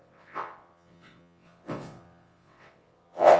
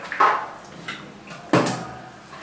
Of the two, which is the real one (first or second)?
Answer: second